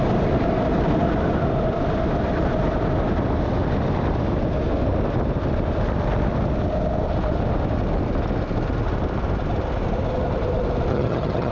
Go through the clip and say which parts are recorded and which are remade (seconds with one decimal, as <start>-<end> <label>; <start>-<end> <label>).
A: 0.0-10.9 recorded; 10.9-11.5 remade